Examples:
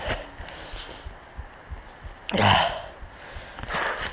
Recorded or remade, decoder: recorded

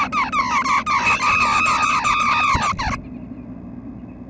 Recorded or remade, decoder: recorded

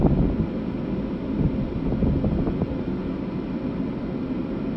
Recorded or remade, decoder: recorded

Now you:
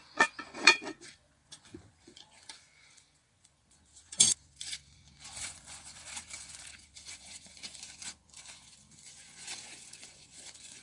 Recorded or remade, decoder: remade, vocoder, Vocos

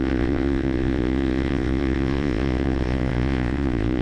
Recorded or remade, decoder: remade, vocoder, Vocos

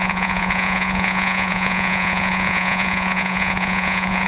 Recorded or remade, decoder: remade, vocoder, Vocos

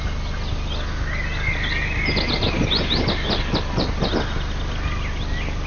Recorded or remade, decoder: recorded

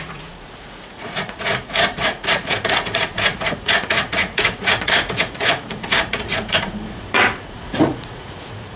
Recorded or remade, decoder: remade, vocoder, Vocos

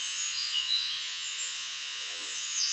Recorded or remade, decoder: remade, vocoder, Vocos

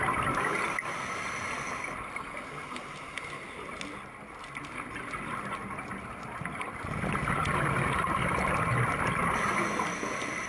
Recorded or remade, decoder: recorded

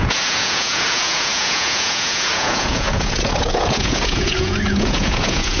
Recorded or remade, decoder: remade, vocoder, Vocos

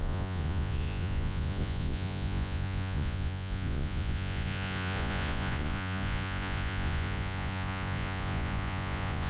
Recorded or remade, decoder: remade, vocoder, Vocos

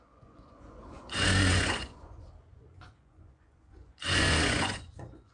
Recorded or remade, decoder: remade, vocoder, Vocos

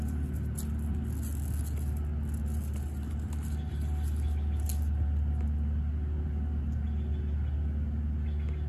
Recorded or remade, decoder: recorded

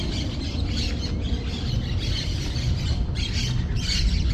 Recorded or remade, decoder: recorded